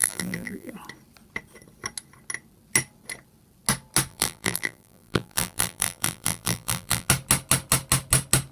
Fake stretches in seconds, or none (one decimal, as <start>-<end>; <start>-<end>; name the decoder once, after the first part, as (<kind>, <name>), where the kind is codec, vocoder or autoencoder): 0.0-0.7 (vocoder, BigVGAN v2); 4.1-7.1